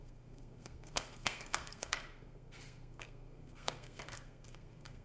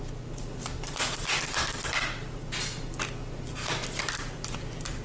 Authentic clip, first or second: second